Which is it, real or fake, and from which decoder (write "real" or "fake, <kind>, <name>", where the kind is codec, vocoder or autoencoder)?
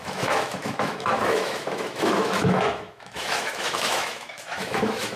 fake, autoencoder, DAC-VAE